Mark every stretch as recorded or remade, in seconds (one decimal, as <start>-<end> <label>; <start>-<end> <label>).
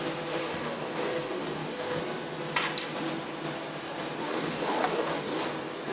0.0-0.4 recorded; 0.4-2.0 remade; 2.0-4.2 recorded; 4.2-5.5 remade; 5.5-5.9 recorded